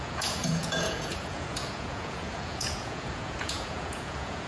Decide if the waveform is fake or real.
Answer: fake